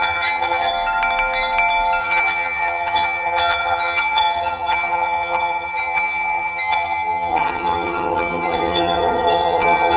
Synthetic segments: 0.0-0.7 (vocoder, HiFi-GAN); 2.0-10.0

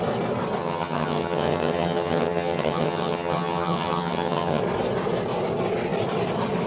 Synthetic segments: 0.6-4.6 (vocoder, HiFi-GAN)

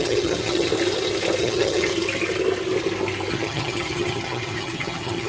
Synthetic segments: 0.0-0.7 (vocoder, HiFi-GAN); 1.4-1.9; 3.3-5.3

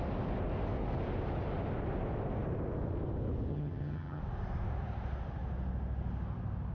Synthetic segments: 3.5-4.2 (vocoder, HiFi-GAN)